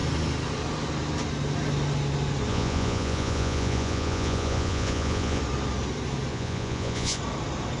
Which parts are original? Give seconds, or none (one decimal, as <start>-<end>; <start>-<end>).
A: 0.0-2.5; 5.4-6.3; 7.2-7.8